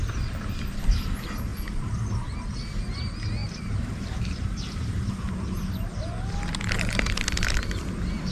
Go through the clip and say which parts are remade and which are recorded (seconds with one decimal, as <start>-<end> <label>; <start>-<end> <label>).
0.0-1.5 recorded; 1.5-2.4 remade; 2.4-3.4 recorded; 3.4-5.1 remade; 5.1-8.3 recorded